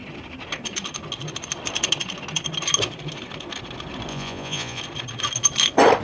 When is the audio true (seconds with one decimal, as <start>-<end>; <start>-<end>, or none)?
0.0-4.1; 4.8-6.0